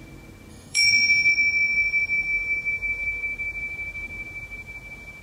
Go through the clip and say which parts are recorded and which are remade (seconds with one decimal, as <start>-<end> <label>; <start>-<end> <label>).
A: 0.0-0.5 recorded; 0.5-1.3 remade; 1.3-5.2 recorded